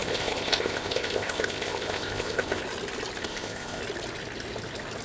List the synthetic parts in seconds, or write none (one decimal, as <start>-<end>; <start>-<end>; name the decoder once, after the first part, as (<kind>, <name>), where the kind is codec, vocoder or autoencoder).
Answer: 0.0-2.6 (codec, ZipCodec); 3.2-3.8